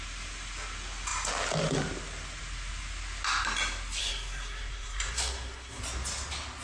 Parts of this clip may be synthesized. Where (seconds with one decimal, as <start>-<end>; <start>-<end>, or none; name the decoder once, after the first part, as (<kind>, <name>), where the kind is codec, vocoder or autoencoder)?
4.0-5.8 (codec, SNAC)